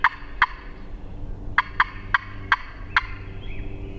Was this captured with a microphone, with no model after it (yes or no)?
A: yes